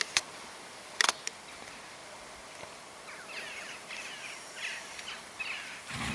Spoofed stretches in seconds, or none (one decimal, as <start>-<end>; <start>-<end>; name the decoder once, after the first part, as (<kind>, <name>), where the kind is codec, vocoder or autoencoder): none